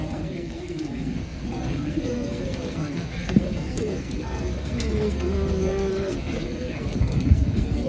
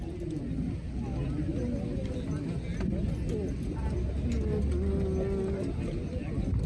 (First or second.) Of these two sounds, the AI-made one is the first